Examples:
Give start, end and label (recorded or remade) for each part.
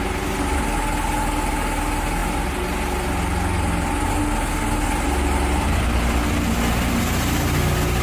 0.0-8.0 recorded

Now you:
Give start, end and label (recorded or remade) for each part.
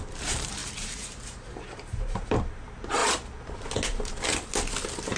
0.0-3.0 remade; 3.0-5.2 recorded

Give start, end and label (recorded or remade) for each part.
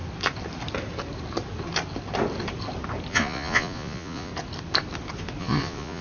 0.0-3.1 recorded; 3.1-4.3 remade; 4.3-5.4 recorded; 5.4-6.0 remade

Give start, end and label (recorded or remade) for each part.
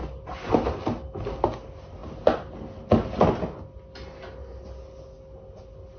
0.0-6.0 recorded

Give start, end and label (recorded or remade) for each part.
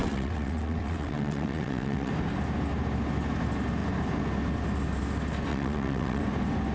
0.0-2.1 remade; 2.1-5.5 recorded; 5.5-6.2 remade; 6.2-6.7 recorded